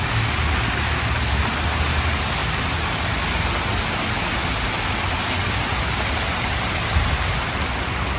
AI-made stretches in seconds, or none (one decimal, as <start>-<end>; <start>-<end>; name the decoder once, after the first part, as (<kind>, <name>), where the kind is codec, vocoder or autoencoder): none